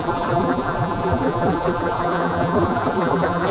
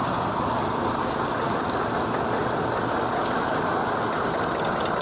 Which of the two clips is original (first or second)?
second